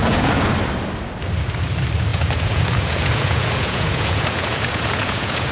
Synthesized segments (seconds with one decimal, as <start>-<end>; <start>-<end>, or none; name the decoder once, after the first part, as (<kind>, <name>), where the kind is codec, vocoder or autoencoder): 0.0-0.5 (vocoder, Vocos); 2.1-5.5